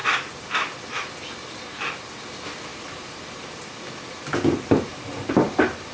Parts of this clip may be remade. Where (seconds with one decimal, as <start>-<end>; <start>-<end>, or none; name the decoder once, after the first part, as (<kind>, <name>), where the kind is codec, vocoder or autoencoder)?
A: none